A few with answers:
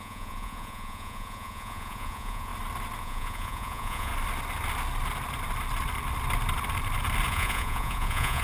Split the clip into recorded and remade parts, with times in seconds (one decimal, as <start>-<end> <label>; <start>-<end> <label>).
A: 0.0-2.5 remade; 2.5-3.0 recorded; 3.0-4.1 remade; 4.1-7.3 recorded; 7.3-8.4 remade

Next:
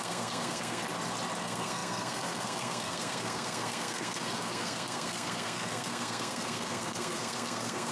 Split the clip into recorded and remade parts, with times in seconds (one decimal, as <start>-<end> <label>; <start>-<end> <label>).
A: 0.0-0.8 remade; 0.8-1.4 recorded; 1.4-7.9 remade

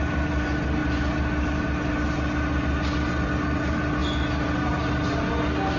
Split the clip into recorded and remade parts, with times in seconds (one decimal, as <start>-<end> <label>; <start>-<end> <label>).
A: 0.0-5.8 recorded